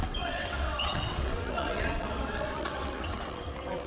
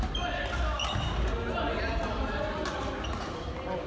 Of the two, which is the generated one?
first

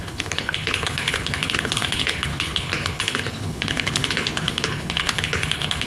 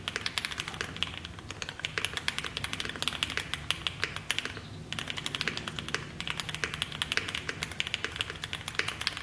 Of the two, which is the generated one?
first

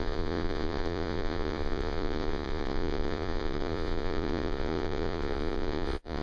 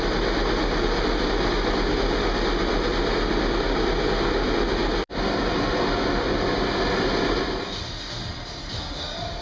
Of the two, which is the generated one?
first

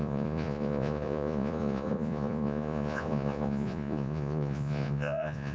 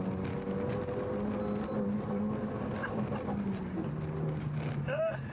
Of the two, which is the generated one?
first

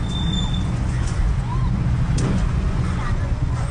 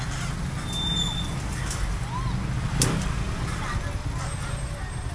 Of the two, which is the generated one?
first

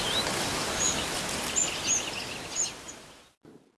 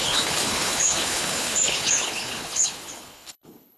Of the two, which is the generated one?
second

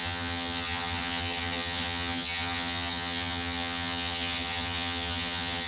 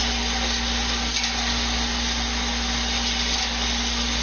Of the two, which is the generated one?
first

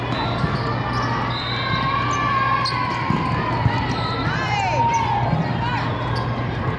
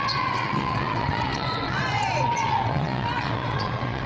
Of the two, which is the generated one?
second